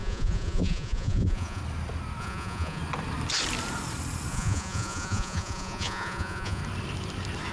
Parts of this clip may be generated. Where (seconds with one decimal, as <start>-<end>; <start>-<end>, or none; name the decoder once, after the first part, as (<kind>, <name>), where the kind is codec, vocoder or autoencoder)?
0.0-1.6 (vocoder, Vocos); 2.2-2.8; 4.3-6.6